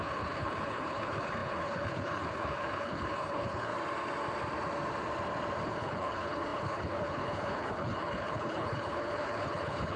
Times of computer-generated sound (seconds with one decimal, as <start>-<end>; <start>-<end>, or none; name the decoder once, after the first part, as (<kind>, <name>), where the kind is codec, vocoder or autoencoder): 0.0-3.7 (codec, HILCodec); 5.7-10.0

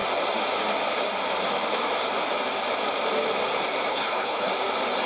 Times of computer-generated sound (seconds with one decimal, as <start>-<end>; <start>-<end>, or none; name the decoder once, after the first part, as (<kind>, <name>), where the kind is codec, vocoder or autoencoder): 3.9-4.5 (codec, HILCodec)